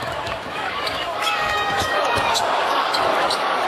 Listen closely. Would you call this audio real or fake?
fake